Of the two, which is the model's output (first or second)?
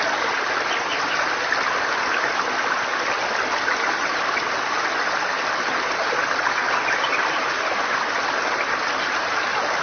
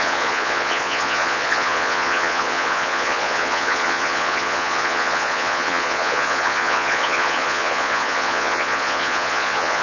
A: second